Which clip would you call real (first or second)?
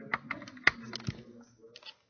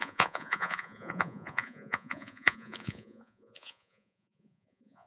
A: first